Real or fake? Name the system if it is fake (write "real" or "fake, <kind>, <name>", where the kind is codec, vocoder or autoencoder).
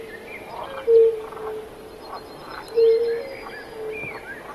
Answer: real